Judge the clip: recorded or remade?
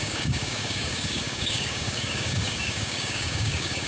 remade